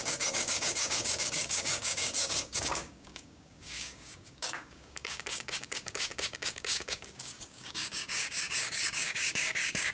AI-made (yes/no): yes